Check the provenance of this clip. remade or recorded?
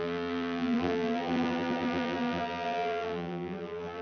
remade